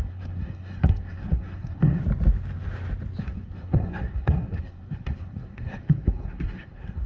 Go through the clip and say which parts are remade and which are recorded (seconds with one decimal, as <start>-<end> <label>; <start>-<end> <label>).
0.0-2.0 remade; 2.0-3.2 recorded; 3.2-7.1 remade